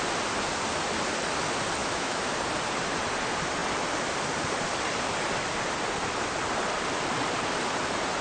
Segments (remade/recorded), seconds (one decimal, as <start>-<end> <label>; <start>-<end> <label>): 0.0-1.8 recorded; 1.8-2.3 remade; 2.3-8.2 recorded